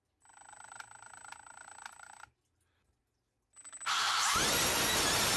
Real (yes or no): yes